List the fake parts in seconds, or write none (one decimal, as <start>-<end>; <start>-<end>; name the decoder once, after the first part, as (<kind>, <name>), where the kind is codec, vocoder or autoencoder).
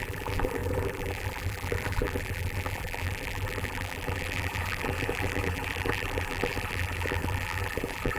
0.0-8.2 (vocoder, BigVGAN v2)